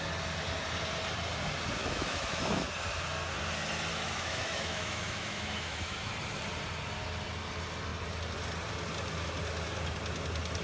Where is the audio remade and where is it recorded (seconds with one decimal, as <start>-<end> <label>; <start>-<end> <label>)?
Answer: 0.0-1.8 recorded; 1.8-2.6 remade; 2.6-3.9 recorded; 3.9-6.1 remade; 6.1-10.6 recorded